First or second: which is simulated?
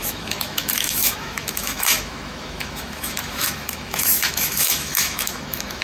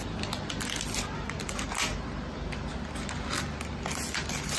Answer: first